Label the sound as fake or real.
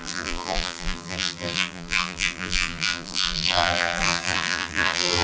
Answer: fake